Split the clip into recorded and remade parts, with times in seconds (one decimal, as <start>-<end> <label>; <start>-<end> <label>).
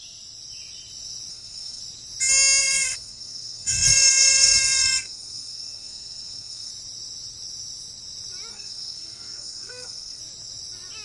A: 0.0-1.3 recorded; 1.3-1.8 remade; 1.8-2.6 recorded; 2.6-6.7 remade; 6.7-8.5 recorded; 8.5-10.2 remade; 10.2-11.0 recorded